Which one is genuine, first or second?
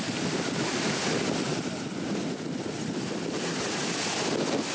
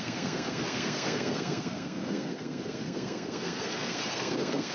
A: first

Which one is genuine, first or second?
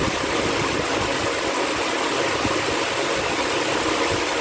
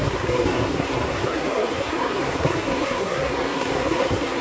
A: first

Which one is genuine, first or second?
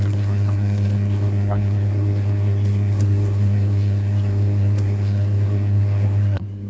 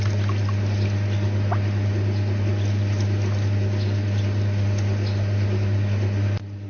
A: second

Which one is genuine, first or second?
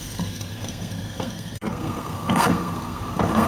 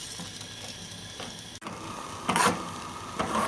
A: second